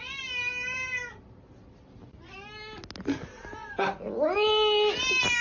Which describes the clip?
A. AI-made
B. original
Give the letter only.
B